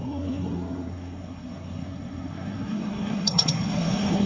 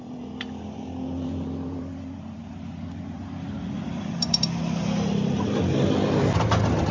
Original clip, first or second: second